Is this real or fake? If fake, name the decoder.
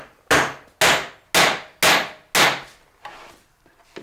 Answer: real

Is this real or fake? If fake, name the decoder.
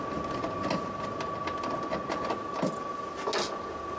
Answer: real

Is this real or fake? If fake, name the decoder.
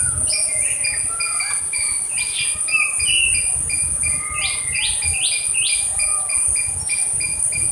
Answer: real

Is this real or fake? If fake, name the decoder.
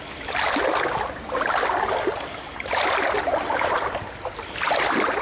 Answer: real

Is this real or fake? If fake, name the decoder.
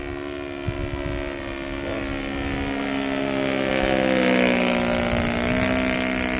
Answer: real